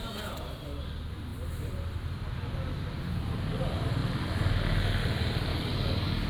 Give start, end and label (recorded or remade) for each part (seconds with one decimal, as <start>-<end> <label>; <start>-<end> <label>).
0.0-5.5 recorded; 5.5-6.3 remade